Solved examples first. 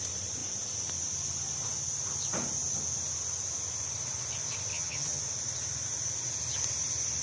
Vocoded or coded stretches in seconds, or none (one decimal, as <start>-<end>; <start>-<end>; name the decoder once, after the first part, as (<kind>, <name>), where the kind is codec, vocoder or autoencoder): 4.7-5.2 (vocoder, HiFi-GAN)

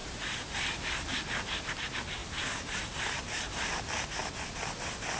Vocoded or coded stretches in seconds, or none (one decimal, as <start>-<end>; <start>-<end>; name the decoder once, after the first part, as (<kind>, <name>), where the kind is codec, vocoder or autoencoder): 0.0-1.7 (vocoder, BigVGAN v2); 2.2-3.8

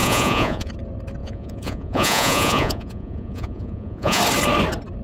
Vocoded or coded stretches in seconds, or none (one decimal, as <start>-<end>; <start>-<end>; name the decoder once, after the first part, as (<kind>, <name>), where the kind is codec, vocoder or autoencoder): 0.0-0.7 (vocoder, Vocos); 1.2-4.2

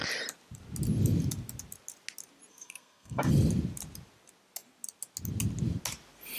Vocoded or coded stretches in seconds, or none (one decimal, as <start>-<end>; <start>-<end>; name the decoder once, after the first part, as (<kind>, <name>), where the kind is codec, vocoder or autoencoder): 2.5-3.3 (codec, SNAC)

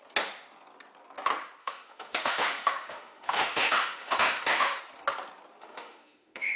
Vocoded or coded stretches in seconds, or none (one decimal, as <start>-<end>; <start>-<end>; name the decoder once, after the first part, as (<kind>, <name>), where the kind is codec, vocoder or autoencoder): 1.6-4.8 (autoencoder, DAC-VAE); 5.6-6.6